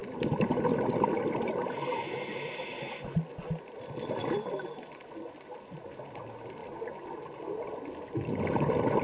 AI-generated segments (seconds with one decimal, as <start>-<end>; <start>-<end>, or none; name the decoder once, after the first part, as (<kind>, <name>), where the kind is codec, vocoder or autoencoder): none